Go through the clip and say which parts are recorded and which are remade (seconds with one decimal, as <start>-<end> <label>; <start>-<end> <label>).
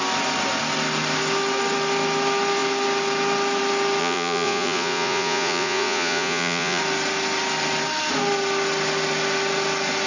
0.0-4.0 recorded; 4.0-6.8 remade; 6.8-10.1 recorded